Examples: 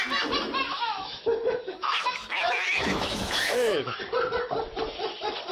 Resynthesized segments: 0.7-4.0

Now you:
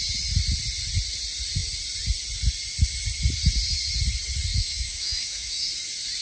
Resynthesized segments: 4.5-5.7

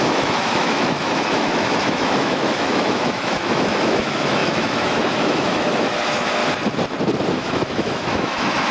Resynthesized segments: 0.0-6.4; 7.3-8.7

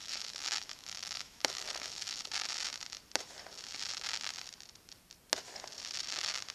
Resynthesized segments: 0.0-2.2

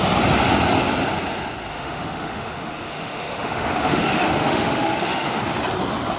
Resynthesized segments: 1.7-5.4

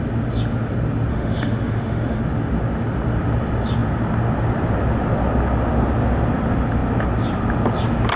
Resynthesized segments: 1.1-2.2